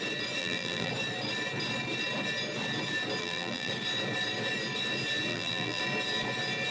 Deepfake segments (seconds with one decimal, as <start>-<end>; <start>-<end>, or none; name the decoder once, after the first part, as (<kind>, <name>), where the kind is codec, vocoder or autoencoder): 0.4-0.9 (vocoder, BigVGAN v2); 3.2-3.7; 5.3-5.8

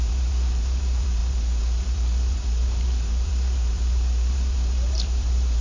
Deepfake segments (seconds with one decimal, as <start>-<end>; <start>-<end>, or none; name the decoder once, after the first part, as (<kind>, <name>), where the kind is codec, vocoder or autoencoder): 0.0-5.6 (vocoder, BigVGAN v2)

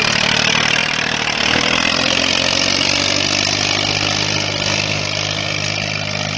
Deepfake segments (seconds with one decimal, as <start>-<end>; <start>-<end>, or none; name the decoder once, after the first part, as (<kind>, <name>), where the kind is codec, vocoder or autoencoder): 0.8-1.4 (vocoder, BigVGAN v2)

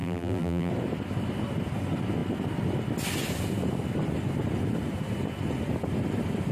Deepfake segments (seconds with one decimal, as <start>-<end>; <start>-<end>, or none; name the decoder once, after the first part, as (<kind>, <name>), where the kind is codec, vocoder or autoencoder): 0.0-0.7 (vocoder, BigVGAN v2)

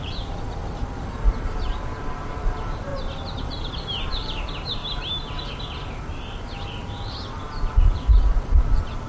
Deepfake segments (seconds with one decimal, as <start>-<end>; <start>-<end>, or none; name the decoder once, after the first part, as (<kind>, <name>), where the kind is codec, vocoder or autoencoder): 0.0-0.6 (vocoder, BigVGAN v2); 1.3-2.9; 3.4-4.8; 7.7-9.1

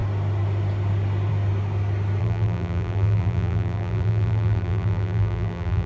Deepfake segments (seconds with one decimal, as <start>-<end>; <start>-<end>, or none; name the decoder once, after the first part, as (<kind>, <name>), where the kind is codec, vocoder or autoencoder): 2.2-5.9 (vocoder, BigVGAN v2)

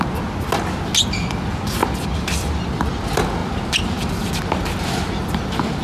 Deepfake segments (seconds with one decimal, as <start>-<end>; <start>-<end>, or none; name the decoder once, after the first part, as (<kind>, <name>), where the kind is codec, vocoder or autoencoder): 1.8-3.0 (vocoder, BigVGAN v2); 3.4-5.8